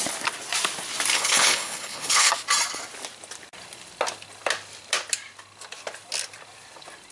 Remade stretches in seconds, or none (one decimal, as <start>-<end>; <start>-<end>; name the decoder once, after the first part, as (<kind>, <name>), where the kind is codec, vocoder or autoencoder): 1.1-2.3 (codec, HILCodec)